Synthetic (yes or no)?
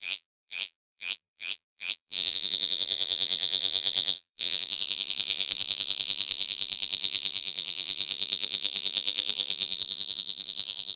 yes